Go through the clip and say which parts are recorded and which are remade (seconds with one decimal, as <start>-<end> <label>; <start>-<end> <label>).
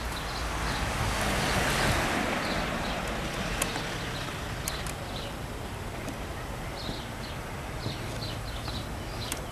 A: 0.0-3.7 recorded; 3.7-6.8 remade; 6.8-9.5 recorded